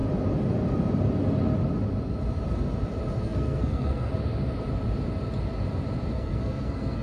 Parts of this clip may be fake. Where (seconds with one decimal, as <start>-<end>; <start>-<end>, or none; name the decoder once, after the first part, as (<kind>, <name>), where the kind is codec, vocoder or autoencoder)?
3.2-4.1 (codec, SNAC); 6.1-7.0